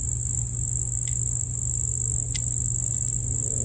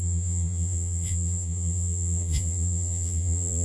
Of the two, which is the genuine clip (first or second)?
first